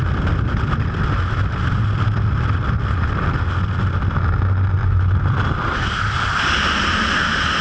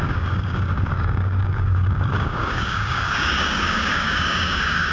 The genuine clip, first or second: first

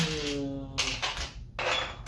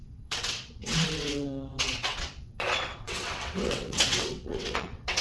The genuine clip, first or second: first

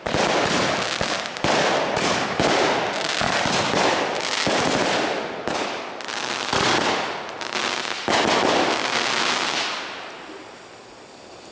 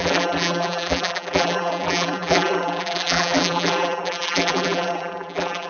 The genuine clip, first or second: first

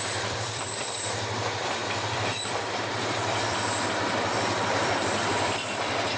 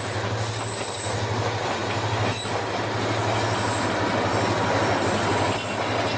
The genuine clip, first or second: second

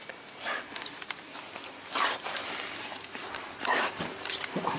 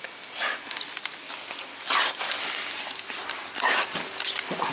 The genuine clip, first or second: second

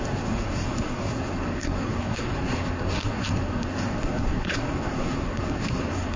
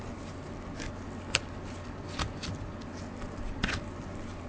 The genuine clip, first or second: second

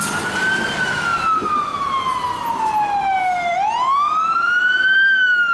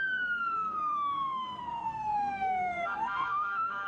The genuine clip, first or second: first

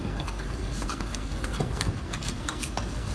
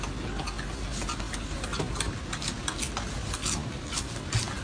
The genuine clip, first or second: second